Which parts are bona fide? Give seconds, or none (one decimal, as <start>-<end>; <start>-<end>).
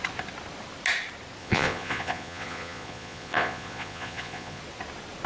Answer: 0.0-1.4; 4.6-5.3